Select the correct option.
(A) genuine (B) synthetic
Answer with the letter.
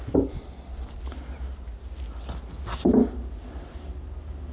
A